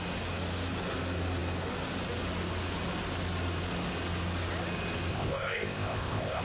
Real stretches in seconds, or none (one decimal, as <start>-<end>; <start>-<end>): 0.0-5.1

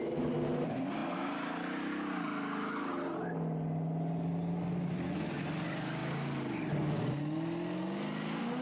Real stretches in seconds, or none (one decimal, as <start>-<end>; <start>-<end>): 0.0-8.6

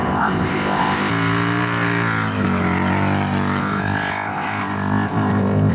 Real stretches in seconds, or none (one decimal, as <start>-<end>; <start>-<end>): 1.1-3.6